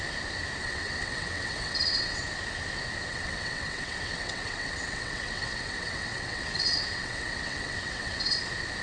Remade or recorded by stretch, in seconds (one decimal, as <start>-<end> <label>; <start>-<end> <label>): 0.0-0.6 recorded; 0.6-2.2 remade; 2.2-3.1 recorded; 3.1-8.4 remade; 8.4-8.8 recorded